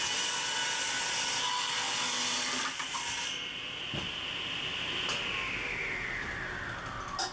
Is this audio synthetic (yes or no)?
no